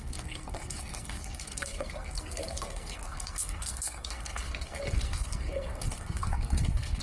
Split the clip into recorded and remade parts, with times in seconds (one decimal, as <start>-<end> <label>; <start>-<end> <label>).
0.0-7.0 remade